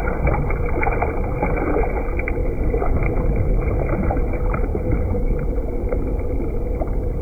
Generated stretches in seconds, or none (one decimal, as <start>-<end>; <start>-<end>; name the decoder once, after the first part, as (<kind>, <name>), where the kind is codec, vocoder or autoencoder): 4.7-5.3 (autoencoder, DAC-VAE)